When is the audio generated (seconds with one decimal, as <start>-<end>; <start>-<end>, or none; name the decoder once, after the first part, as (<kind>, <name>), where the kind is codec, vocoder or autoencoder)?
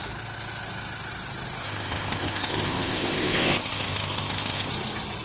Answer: 1.6-4.7 (codec, ZipCodec)